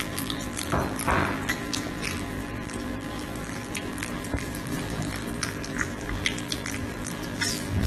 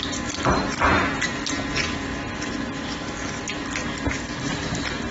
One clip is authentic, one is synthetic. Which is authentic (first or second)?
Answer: second